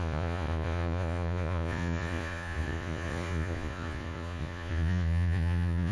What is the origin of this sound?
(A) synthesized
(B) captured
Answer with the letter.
A